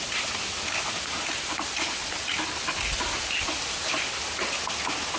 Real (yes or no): yes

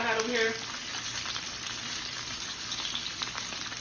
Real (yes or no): yes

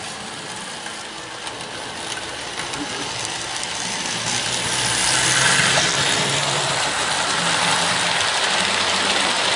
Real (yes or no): yes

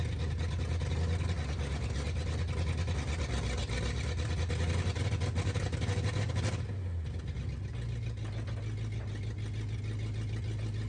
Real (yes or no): yes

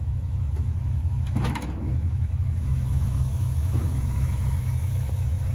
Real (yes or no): no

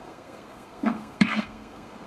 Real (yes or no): no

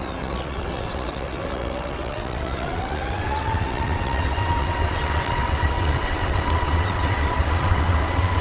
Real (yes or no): no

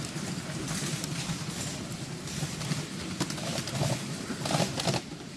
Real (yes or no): yes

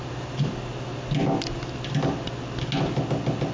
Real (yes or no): yes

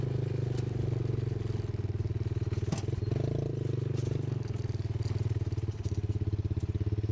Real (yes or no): yes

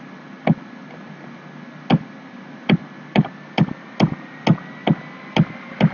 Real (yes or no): yes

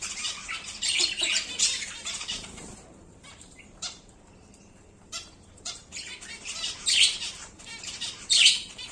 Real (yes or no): no